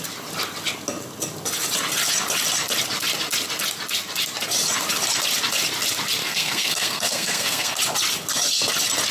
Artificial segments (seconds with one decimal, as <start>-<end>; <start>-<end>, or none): 6.2-7.8

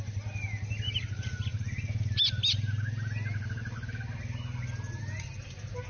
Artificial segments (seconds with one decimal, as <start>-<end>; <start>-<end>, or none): none

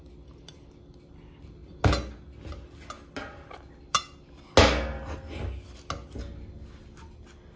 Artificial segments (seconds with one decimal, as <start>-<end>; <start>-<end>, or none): none

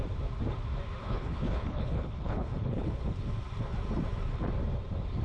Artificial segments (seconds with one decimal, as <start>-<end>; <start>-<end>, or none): 1.0-3.0